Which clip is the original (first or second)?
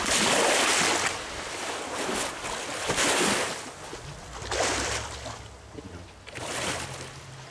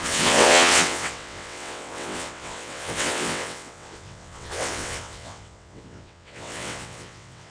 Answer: first